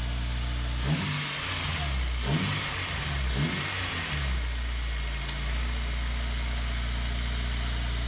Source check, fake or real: real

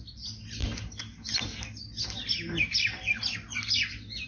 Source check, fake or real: real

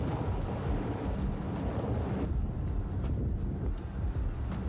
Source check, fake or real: real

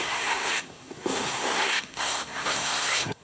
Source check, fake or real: fake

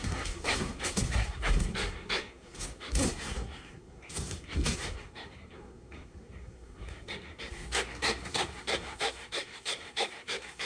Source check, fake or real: fake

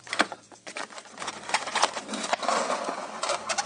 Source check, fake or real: fake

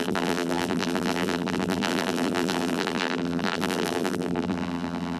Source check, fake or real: fake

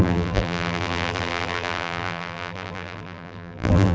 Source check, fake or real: fake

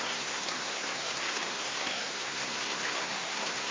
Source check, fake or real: fake